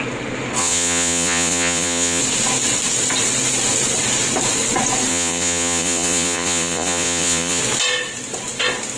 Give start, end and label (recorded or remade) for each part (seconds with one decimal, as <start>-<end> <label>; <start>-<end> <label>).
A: 0.0-0.6 recorded; 0.6-2.2 remade; 2.2-5.1 recorded; 5.1-7.6 remade; 7.6-9.0 recorded